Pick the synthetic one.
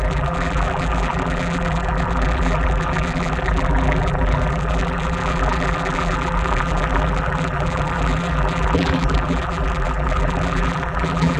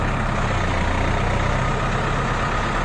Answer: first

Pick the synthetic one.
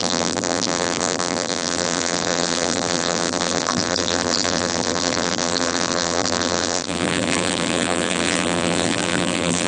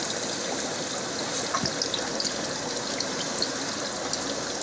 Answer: first